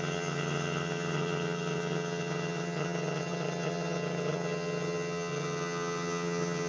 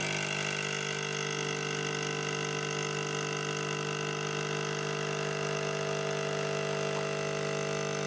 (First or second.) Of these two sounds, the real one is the second